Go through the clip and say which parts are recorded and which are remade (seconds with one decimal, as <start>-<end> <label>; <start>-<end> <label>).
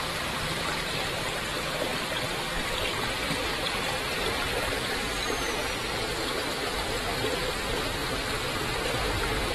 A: 0.0-1.9 remade; 1.9-4.0 recorded; 4.0-9.5 remade